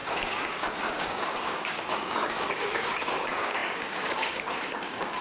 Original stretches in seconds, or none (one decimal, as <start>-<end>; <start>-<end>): none

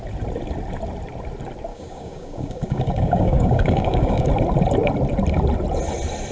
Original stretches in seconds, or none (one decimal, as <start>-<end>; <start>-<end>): 0.0-1.7; 4.3-6.3

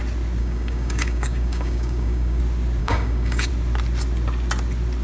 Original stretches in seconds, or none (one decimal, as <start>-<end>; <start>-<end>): 0.0-0.4; 2.4-2.8; 3.5-5.0

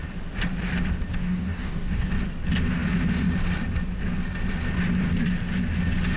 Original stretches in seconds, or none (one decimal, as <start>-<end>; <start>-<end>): 0.0-1.2; 2.1-6.2

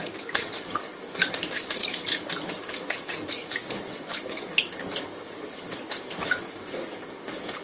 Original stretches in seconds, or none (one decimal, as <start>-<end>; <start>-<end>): none

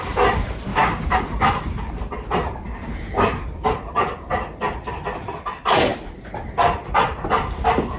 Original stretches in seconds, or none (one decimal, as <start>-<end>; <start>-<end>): 0.0-0.7; 1.2-8.0